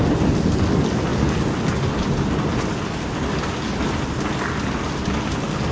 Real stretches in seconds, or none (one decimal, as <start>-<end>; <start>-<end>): 0.0-5.7